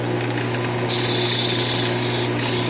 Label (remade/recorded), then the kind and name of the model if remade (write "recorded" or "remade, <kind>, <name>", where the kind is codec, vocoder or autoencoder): recorded